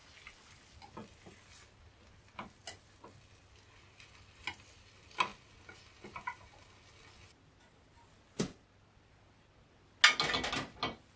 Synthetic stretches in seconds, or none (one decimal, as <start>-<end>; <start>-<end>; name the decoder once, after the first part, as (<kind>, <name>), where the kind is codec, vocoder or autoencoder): none